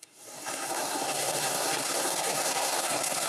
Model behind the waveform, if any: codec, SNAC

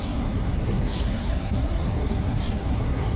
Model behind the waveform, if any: codec, SNAC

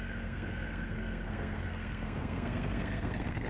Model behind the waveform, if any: codec, SNAC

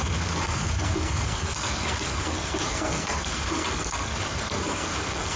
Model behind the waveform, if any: codec, SNAC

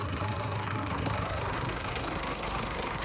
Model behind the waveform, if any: codec, SNAC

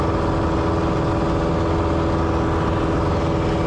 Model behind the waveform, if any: none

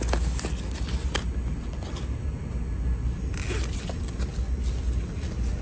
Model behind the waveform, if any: none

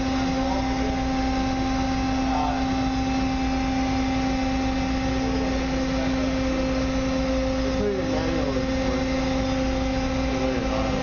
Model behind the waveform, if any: none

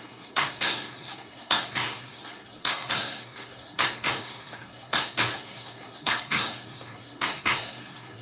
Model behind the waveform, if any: codec, SNAC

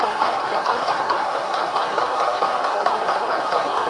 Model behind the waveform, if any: codec, SNAC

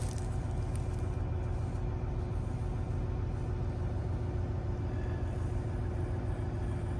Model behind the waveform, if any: none